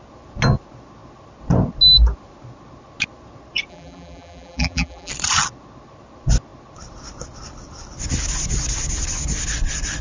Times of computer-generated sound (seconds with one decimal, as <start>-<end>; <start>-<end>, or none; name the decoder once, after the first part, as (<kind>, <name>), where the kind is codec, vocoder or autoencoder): 3.7-5.1 (vocoder, BigVGAN v2)